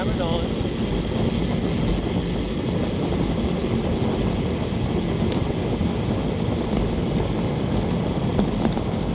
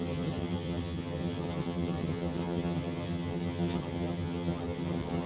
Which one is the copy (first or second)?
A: second